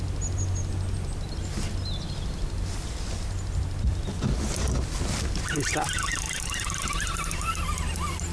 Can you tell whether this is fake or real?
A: real